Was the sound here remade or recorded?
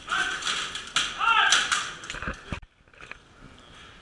recorded